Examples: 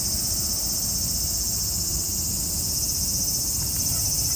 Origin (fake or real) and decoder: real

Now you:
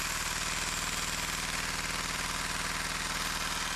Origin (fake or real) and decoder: real